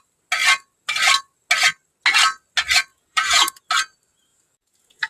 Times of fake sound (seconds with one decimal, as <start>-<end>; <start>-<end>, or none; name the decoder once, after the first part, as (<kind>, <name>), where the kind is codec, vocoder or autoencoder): 2.9-3.6 (vocoder, Vocos); 4.3-5.1